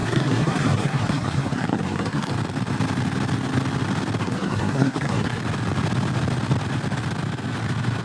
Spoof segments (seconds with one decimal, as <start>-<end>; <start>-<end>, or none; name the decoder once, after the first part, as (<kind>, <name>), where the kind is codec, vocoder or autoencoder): 0.0-2.3 (codec, SNAC); 4.2-5.4